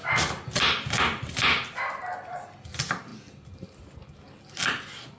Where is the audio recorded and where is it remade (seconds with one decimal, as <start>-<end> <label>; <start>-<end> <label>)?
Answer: 0.0-5.2 recorded